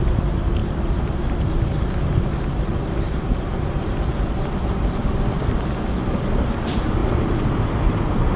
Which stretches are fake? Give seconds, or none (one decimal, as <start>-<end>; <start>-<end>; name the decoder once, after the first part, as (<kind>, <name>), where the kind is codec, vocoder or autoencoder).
0.6-3.9 (vocoder, BigVGAN v2); 7.0-8.4